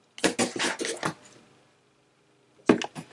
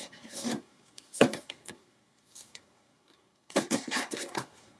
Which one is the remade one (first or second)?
second